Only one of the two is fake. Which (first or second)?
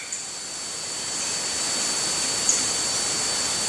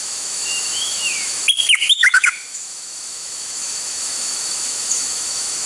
second